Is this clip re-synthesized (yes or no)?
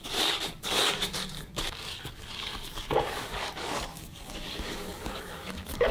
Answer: yes